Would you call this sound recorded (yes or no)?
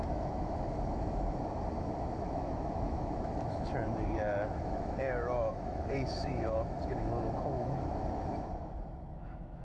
no